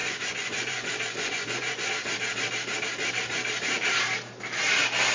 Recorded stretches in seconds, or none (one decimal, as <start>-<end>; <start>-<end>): 1.9-5.1